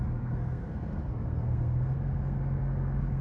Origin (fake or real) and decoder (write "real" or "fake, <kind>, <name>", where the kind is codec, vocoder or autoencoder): fake, codec, SNAC